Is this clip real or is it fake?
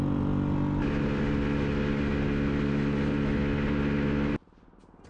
real